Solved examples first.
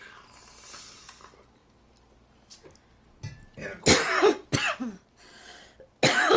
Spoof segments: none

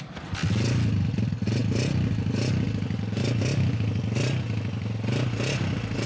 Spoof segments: none

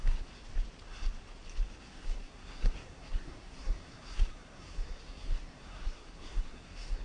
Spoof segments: 0.0-0.4; 1.8-7.0

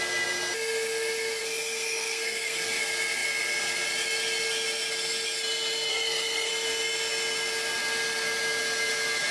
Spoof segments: 1.4-2.8; 5.9-6.5

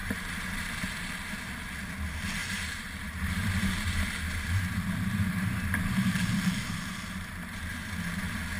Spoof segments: 0.0-0.5; 2.4-7.6

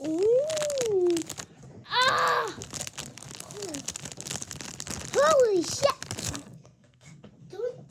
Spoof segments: 6.2-7.3

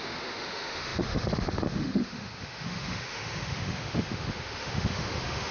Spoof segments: 0.0-5.5

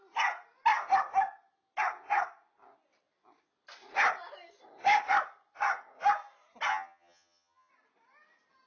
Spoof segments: 6.7-7.7